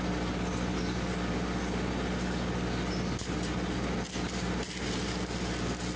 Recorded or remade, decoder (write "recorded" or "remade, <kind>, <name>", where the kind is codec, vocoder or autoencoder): recorded